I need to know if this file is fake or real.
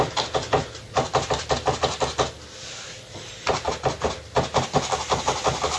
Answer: real